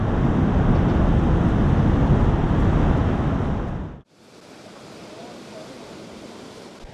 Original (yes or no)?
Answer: yes